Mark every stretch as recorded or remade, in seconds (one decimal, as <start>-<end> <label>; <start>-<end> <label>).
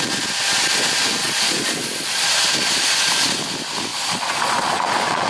0.0-1.2 recorded; 1.2-2.3 remade; 2.3-3.9 recorded; 3.9-5.3 remade